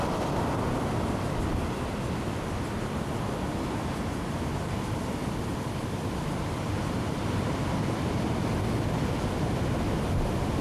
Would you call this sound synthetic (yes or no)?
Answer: no